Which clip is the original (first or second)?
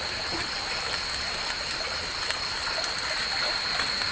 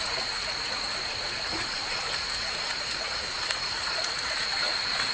first